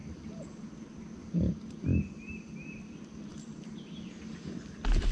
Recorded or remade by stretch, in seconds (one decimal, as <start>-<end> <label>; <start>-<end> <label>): 0.0-3.3 recorded; 3.3-5.1 remade